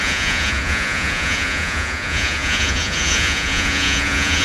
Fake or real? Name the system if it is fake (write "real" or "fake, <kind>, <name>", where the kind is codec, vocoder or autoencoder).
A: fake, vocoder, Vocos